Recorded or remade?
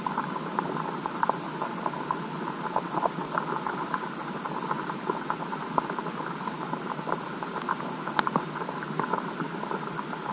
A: recorded